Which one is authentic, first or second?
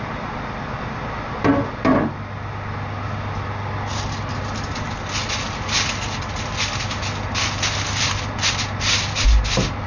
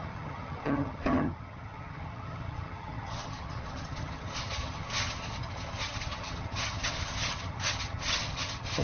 first